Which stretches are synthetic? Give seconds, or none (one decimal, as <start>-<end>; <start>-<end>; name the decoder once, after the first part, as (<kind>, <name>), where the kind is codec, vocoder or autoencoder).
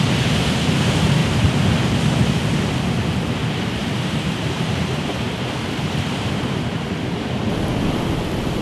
1.2-1.7 (vocoder, BigVGAN v2); 3.8-5.3